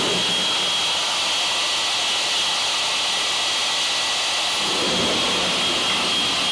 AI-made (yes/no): no